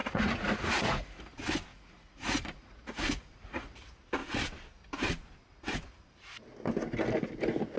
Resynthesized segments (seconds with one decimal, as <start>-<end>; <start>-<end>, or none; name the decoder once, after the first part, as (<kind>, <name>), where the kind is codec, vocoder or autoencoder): 0.0-1.2 (vocoder, Vocos); 1.7-3.7